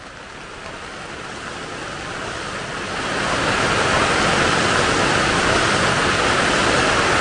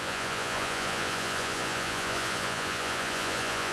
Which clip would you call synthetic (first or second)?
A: second